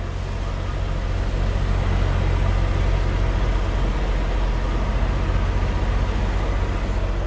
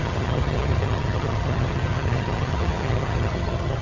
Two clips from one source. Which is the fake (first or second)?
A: second